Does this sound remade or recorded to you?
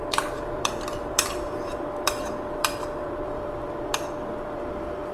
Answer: remade